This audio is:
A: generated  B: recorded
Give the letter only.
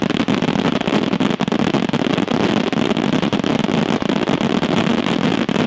A